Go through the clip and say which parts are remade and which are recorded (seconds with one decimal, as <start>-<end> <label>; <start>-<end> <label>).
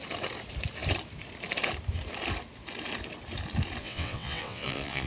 0.0-3.8 recorded; 3.8-5.1 remade